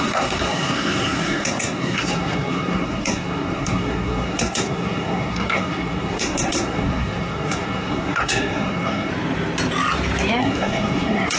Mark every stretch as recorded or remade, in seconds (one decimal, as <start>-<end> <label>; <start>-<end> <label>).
0.0-9.1 remade; 9.1-10.4 recorded; 10.4-11.4 remade